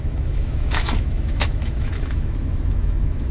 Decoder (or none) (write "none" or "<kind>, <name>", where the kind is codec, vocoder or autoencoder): autoencoder, DAC-VAE